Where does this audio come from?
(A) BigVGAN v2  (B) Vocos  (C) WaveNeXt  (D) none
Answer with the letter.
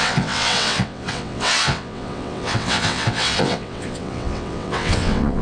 C